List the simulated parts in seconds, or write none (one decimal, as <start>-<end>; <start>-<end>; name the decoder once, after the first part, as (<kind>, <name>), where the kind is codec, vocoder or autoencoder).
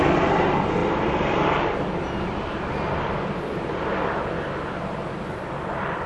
none